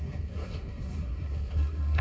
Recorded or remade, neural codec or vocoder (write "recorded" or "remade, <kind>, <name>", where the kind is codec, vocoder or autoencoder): remade, codec, SNAC